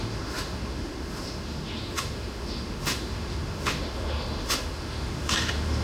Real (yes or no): no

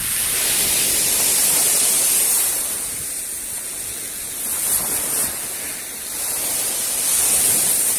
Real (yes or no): yes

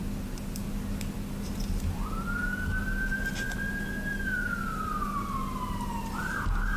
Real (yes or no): yes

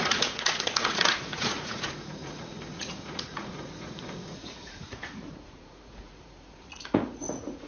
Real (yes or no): no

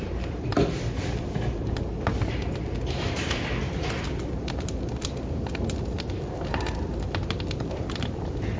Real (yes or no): no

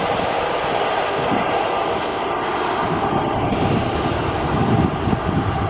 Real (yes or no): yes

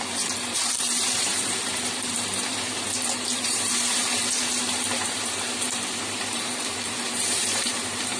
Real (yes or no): no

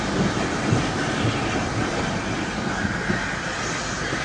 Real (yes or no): yes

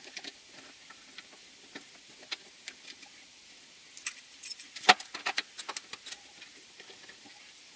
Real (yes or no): no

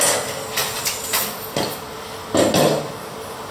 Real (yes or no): yes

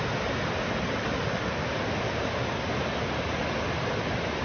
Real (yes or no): yes